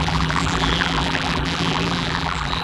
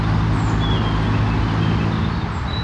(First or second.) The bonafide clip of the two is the second